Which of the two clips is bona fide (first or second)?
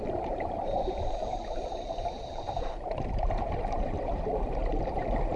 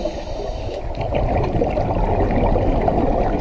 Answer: second